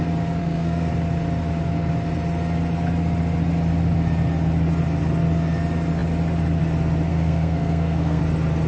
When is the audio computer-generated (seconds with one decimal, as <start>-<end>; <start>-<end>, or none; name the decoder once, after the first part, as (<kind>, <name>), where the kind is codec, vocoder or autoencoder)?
0.4-0.9 (codec, SNAC); 7.1-8.2